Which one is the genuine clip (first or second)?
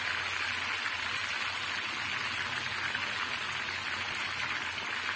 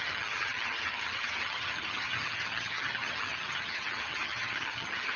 first